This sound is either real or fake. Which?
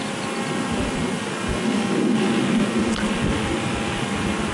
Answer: real